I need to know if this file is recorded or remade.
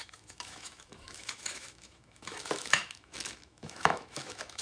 remade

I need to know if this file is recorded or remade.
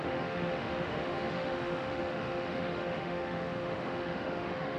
remade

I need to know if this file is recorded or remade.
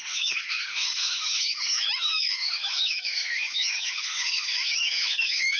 remade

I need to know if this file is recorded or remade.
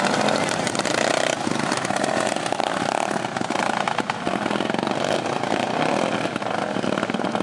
recorded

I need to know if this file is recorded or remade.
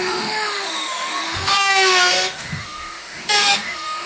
remade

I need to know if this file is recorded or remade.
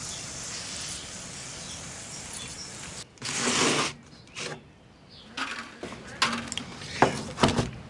recorded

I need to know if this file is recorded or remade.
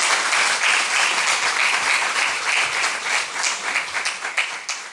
recorded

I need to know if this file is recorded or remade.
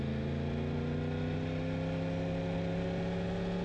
recorded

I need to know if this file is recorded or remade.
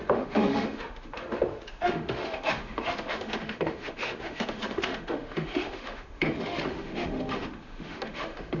remade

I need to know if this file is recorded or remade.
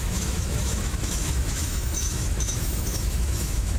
remade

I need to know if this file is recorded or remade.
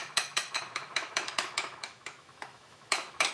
remade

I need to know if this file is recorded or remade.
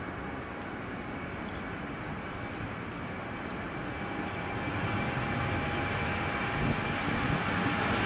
recorded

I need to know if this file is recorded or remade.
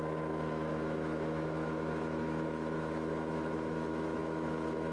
remade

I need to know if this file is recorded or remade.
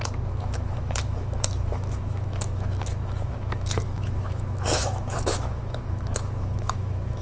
remade